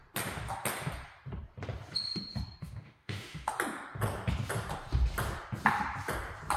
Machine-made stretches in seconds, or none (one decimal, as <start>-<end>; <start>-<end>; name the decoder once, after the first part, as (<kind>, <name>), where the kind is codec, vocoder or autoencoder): 2.6-3.5 (autoencoder, DAC-VAE)